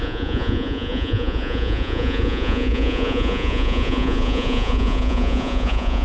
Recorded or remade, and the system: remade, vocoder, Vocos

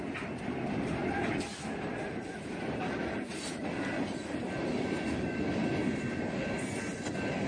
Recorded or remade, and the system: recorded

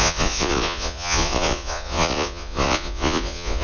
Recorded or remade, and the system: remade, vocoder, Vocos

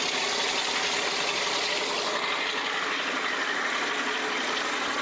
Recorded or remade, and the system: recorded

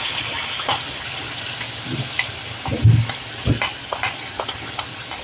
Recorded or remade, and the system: recorded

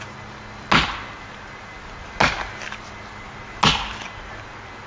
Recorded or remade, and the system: recorded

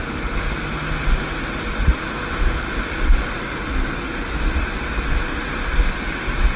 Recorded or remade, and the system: recorded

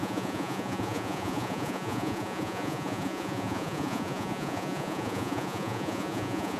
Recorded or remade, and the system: remade, vocoder, Vocos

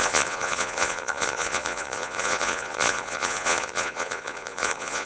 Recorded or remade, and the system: remade, vocoder, Vocos